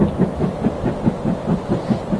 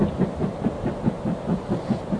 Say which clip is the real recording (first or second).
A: first